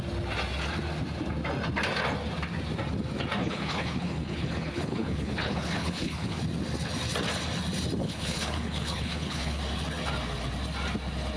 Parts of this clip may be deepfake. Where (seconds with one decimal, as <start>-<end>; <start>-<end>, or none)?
3.4-6.4; 8.0-9.6